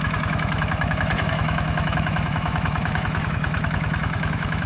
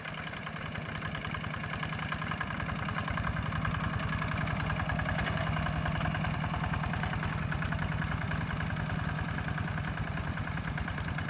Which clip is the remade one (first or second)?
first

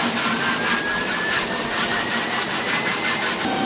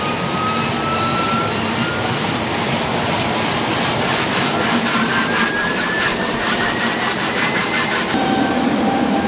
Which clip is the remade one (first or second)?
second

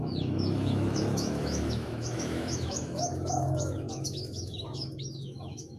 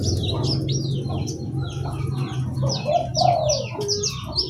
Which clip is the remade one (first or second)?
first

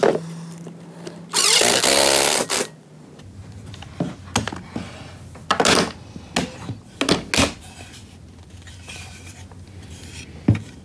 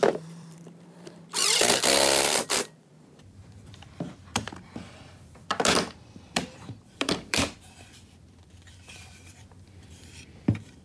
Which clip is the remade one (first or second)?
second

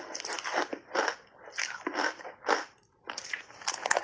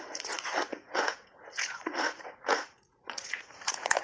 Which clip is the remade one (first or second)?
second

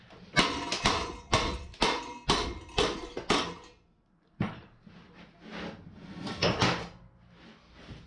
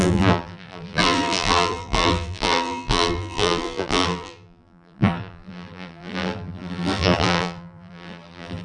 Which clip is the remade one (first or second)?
second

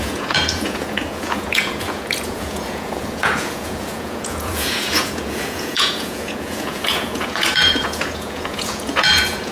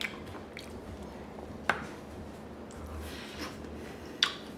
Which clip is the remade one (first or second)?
first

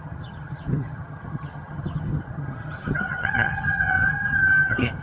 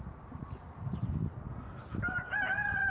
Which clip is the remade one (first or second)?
first